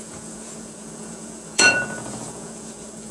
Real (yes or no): no